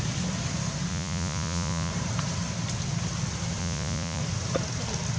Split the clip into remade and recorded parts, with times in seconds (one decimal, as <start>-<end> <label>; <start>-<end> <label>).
0.0-0.9 recorded; 0.9-1.9 remade; 1.9-3.6 recorded; 3.6-4.2 remade; 4.2-5.2 recorded